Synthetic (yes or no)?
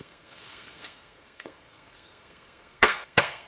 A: yes